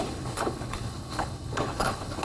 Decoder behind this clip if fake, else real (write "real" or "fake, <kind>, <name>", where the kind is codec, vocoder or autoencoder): fake, codec, HILCodec